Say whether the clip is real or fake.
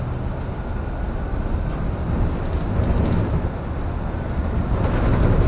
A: real